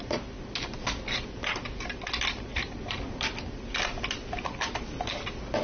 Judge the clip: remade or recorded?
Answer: recorded